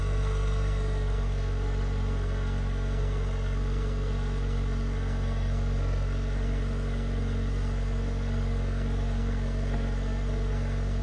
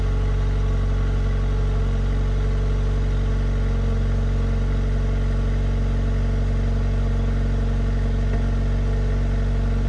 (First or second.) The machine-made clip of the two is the first